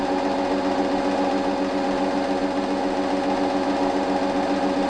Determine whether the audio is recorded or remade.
recorded